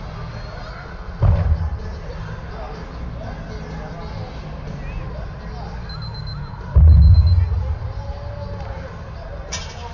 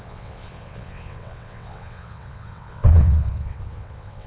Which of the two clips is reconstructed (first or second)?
second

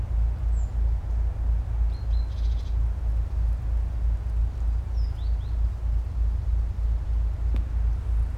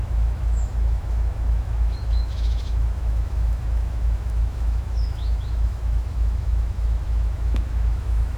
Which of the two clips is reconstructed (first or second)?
second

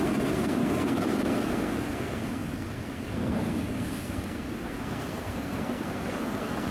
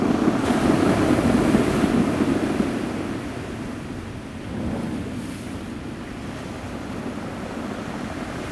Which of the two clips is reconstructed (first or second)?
first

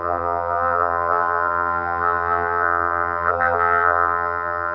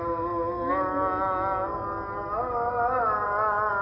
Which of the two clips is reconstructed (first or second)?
first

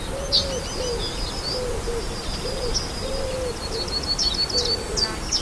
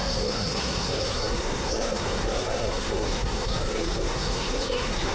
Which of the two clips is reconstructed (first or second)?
second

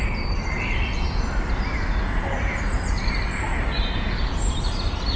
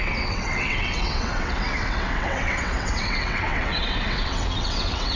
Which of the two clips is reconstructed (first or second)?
second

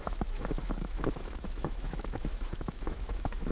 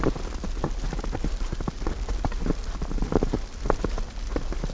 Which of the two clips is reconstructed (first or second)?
first